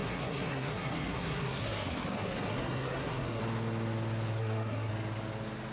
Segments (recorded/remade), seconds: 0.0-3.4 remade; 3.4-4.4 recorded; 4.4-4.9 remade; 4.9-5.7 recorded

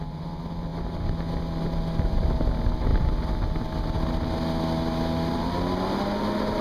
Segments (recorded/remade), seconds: 0.0-6.6 recorded

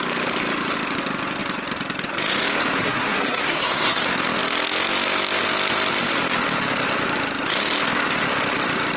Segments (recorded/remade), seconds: 0.0-2.8 recorded; 2.8-4.0 remade; 4.0-9.0 recorded

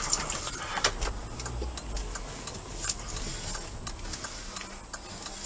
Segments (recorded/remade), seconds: 0.0-5.5 recorded